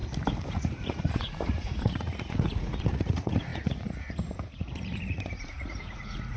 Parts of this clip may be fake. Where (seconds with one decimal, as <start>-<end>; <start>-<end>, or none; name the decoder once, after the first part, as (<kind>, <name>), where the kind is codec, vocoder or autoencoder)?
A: 0.5-6.4 (vocoder, Vocos)